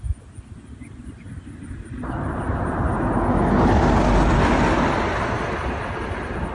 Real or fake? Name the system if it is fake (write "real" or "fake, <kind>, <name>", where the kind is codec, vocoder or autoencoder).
real